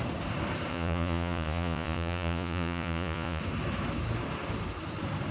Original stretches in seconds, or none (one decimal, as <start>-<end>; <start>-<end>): 0.0-0.7; 3.4-5.3